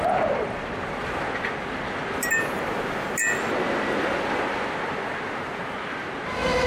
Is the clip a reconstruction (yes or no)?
no